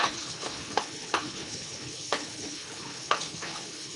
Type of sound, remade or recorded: remade